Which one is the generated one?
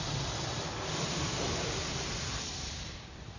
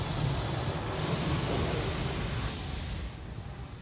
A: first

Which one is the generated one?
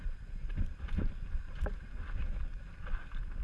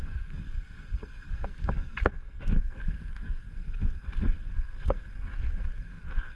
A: second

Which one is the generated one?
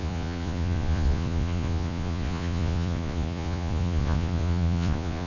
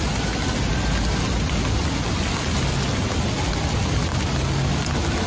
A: first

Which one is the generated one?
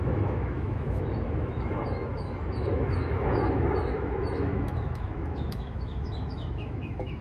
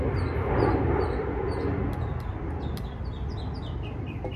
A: first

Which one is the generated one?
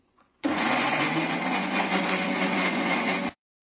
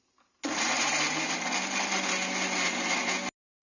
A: first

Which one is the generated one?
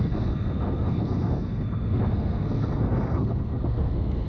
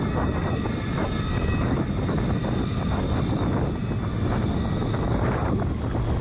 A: first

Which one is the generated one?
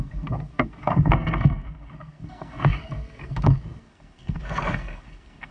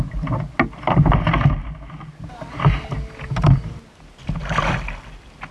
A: first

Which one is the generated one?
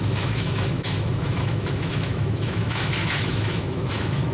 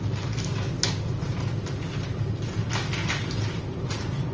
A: first